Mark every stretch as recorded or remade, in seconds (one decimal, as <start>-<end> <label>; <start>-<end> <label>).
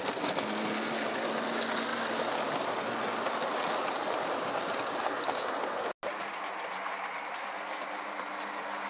0.0-8.9 recorded